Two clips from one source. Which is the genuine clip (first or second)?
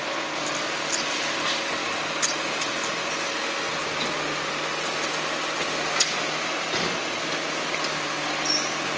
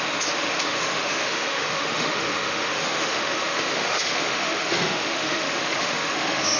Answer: first